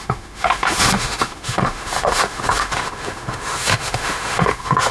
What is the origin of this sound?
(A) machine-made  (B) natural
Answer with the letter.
A